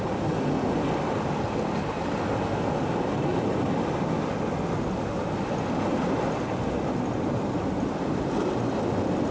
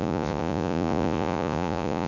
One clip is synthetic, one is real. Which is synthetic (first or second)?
second